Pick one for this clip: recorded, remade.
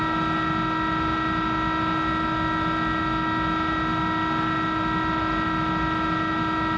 recorded